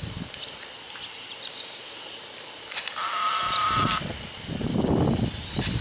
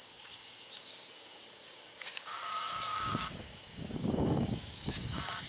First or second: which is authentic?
first